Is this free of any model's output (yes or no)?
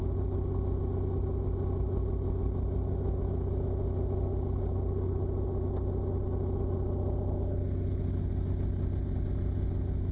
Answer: yes